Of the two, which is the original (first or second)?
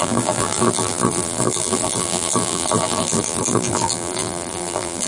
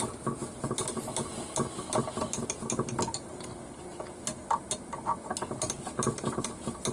second